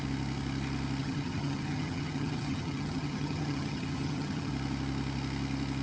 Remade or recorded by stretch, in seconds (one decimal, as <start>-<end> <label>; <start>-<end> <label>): 0.0-1.0 recorded; 1.0-4.5 remade; 4.5-5.8 recorded